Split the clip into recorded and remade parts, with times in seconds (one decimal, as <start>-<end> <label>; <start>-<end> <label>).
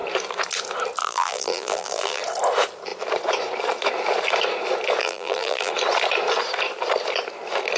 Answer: 0.0-1.0 recorded; 1.0-2.2 remade; 2.2-5.0 recorded; 5.0-5.7 remade; 5.7-7.8 recorded